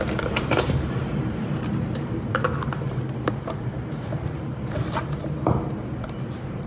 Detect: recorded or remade remade